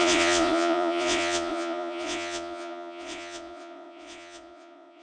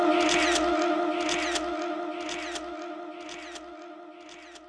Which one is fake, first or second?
first